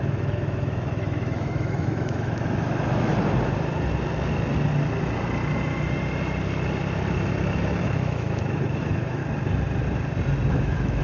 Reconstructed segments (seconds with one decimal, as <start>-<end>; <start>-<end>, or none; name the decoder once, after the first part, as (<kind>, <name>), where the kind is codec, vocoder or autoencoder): 0.0-3.1 (autoencoder, DAC-VAE); 7.8-9.2; 10.5-11.0

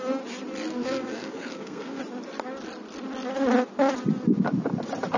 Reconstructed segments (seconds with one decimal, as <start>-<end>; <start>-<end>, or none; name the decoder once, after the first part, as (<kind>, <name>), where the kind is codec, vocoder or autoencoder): 0.7-2.0 (codec, SNAC)

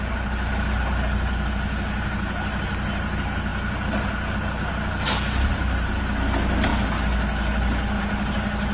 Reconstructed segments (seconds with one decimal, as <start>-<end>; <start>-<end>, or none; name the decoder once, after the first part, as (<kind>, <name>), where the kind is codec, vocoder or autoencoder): none

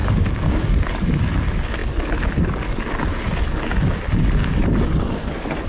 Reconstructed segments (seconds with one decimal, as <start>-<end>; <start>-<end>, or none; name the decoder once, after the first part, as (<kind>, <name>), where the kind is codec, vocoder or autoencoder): 0.0-1.2 (codec, DAC); 4.4-5.7

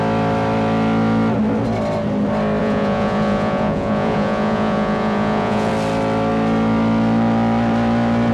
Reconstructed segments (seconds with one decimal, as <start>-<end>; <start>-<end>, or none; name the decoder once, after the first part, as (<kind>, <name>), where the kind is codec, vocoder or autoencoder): 2.6-5.7 (vocoder, Vocos)